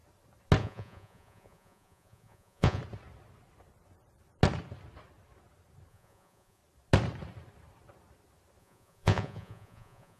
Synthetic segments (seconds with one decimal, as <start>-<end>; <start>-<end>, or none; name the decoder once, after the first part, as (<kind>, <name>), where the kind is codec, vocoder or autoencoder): 0.6-2.8 (vocoder, Vocos); 5.9-6.6; 8.6-10.2